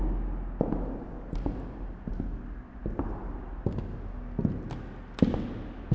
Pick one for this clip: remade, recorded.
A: recorded